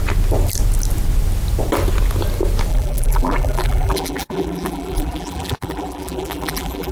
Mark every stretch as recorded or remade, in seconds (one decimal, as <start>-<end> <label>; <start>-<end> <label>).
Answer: 0.0-2.7 recorded; 2.7-6.9 remade